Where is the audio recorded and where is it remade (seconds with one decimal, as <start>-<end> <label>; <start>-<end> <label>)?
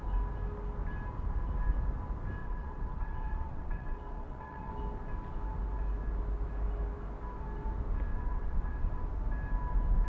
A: 0.0-2.4 recorded; 2.4-4.7 remade; 4.7-8.1 recorded; 8.1-8.9 remade; 8.9-10.1 recorded